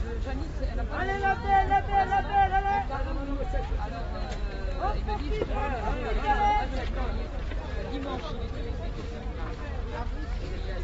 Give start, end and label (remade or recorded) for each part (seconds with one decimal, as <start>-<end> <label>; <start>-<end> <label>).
0.0-5.6 recorded; 5.6-9.3 remade; 9.3-10.8 recorded